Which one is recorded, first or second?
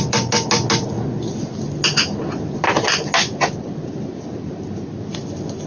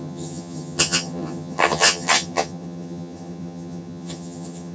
first